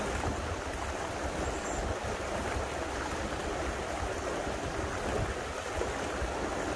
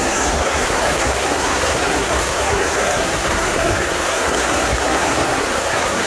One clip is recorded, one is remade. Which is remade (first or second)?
second